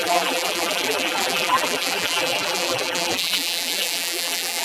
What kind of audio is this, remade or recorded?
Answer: remade